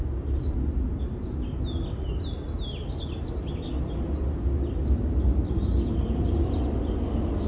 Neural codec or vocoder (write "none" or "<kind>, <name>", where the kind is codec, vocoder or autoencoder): none